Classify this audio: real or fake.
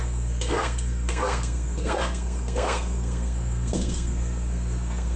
fake